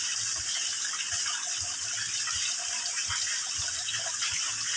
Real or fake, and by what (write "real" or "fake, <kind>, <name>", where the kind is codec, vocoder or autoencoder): real